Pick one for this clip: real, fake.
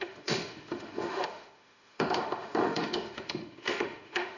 fake